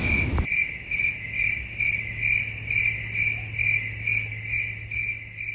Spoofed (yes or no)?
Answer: no